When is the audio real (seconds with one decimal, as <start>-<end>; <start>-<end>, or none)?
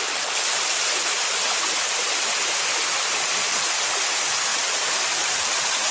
0.0-5.9